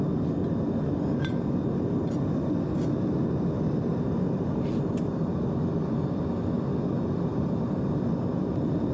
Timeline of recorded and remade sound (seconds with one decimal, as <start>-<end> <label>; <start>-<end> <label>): 0.0-7.3 recorded; 7.3-8.2 remade; 8.2-8.9 recorded